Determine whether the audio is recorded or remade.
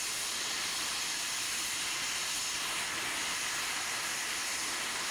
recorded